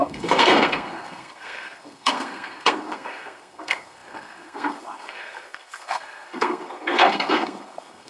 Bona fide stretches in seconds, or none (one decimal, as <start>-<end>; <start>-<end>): none